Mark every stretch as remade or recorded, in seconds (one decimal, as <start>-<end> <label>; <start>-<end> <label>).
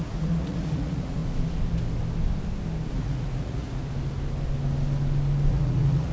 0.0-1.2 remade; 1.2-2.9 recorded; 2.9-3.8 remade; 3.8-5.5 recorded; 5.5-6.1 remade